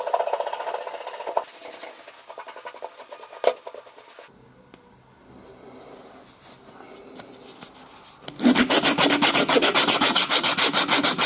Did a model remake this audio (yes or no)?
no